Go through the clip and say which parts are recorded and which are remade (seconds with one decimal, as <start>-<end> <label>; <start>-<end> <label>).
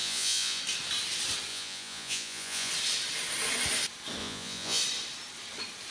0.0-0.6 remade; 0.6-1.5 recorded; 1.5-2.7 remade; 2.7-4.2 recorded; 4.2-4.8 remade; 4.8-5.9 recorded